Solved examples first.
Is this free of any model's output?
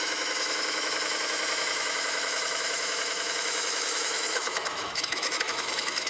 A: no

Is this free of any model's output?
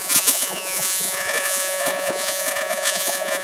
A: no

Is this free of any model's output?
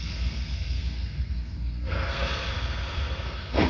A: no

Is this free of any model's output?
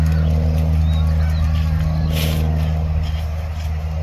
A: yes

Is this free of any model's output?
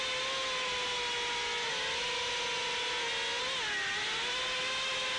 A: yes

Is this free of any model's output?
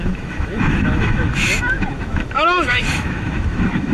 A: no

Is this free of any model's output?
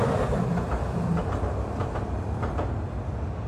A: yes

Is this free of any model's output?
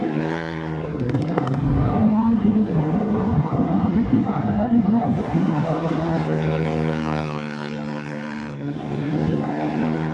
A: no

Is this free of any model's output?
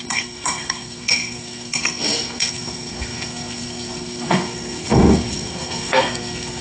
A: no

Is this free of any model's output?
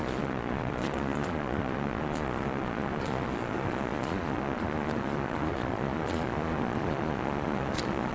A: no